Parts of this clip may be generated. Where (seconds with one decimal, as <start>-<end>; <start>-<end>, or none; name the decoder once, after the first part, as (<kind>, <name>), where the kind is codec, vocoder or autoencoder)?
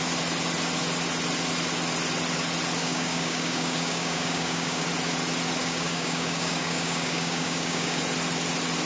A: 2.8-4.9 (codec, DAC); 5.6-8.0